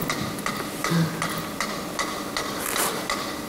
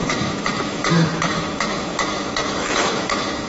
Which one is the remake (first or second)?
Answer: second